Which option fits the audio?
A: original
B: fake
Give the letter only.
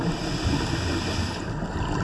A